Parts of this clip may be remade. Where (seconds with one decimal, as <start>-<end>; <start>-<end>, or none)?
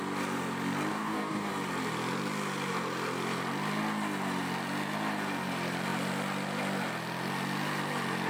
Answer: 0.9-1.5